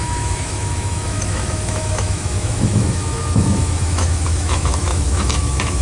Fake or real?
fake